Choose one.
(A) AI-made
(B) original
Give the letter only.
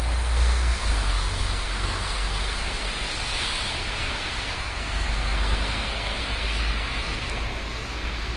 A